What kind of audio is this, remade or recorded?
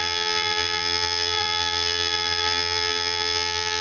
remade